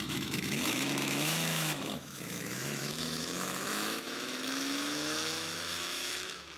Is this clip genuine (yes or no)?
no